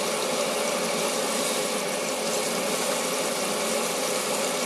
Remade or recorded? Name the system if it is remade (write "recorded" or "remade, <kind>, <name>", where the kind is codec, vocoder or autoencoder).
recorded